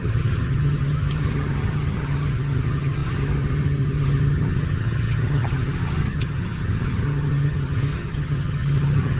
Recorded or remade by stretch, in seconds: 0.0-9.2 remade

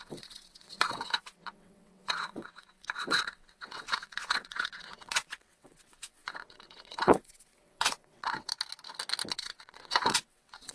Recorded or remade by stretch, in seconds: 0.0-8.5 remade; 8.5-9.3 recorded; 9.3-10.7 remade